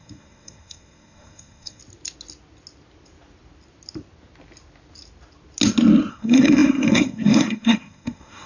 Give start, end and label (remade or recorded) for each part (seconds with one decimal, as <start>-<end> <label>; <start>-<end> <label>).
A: 0.0-1.8 remade; 1.8-6.1 recorded; 6.1-8.5 remade